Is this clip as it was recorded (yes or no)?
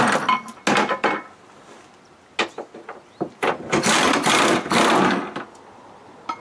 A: yes